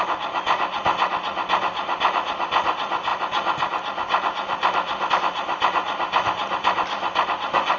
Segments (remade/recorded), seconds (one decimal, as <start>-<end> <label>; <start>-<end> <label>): 0.0-7.8 recorded